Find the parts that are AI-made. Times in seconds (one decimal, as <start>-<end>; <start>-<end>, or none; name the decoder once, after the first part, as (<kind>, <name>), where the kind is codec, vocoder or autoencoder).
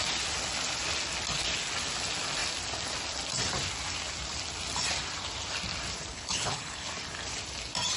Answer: 6.1-6.9 (codec, HILCodec)